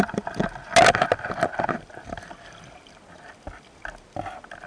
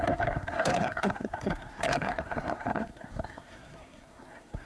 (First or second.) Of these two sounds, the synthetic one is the second